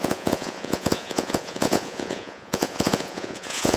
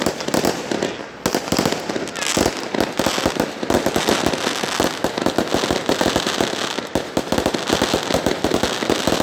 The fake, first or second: first